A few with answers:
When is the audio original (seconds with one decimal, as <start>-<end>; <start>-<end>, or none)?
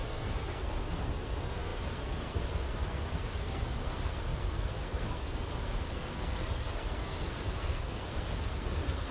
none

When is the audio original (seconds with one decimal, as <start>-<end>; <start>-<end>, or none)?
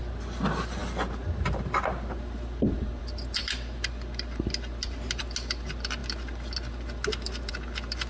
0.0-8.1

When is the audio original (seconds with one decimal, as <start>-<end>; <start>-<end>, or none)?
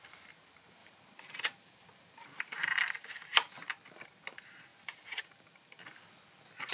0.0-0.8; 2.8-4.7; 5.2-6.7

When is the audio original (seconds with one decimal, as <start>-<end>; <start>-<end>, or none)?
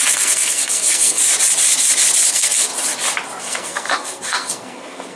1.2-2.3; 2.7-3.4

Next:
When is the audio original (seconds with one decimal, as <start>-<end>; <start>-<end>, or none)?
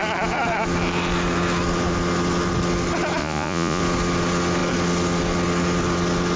0.0-3.2; 3.8-6.4